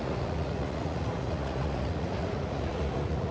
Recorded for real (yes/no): no